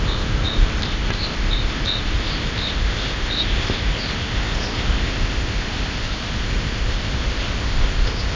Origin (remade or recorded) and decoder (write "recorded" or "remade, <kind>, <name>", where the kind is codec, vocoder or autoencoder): remade, codec, ZipCodec